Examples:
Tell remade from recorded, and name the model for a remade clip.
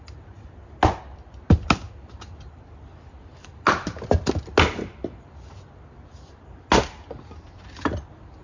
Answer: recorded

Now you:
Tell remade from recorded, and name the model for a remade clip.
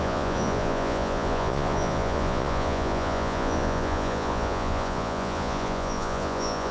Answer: remade, vocoder, Vocos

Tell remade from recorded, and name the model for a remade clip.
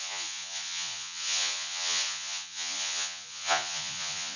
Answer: remade, vocoder, Vocos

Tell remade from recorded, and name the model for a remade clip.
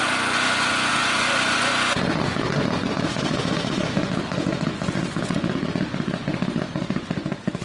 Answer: remade, vocoder, Vocos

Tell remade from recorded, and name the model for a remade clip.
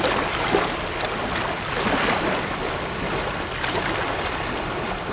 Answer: recorded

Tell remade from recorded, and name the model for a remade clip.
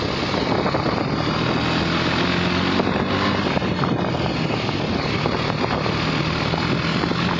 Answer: recorded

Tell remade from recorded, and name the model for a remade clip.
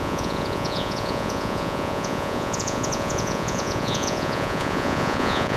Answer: remade, vocoder, Vocos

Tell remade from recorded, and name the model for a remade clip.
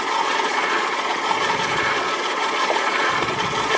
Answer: remade, vocoder, Vocos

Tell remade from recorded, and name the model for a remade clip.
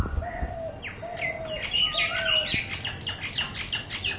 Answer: recorded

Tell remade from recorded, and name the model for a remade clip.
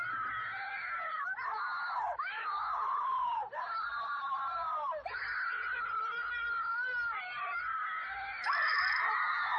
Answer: recorded